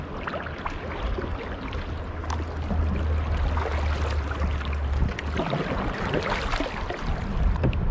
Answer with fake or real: real